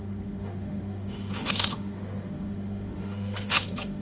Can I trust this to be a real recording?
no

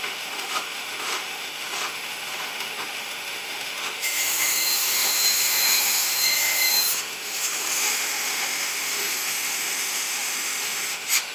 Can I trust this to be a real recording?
no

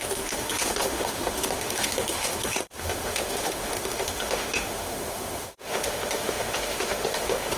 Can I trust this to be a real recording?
no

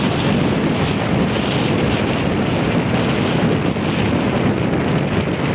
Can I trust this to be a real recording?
yes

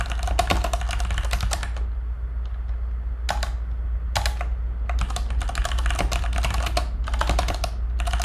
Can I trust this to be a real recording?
yes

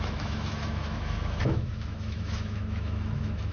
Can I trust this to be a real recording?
no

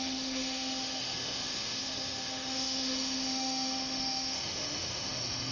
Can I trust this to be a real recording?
no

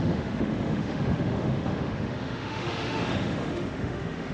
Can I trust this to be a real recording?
no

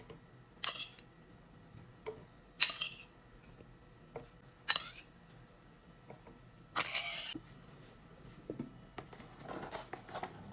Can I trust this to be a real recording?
yes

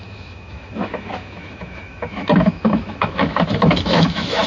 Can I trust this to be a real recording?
no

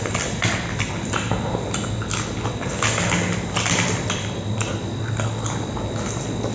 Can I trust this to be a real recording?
yes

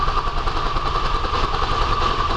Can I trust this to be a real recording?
yes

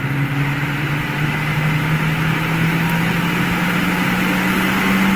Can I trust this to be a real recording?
yes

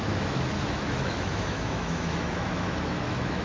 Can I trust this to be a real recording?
no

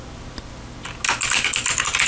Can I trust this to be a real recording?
yes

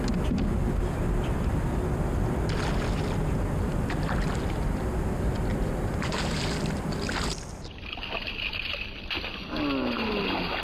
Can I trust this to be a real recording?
yes